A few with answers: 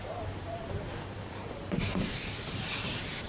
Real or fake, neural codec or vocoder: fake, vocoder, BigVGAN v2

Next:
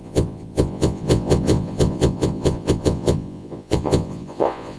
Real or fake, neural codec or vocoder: fake, vocoder, Vocos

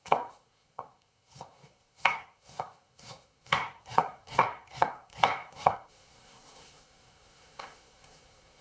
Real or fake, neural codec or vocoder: fake, codec, SNAC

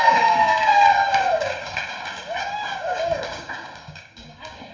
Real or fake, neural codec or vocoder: fake, codec, DAC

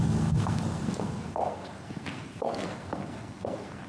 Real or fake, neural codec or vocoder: fake, codec, SNAC